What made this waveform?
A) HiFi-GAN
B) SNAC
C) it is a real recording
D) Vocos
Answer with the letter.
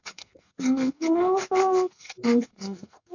B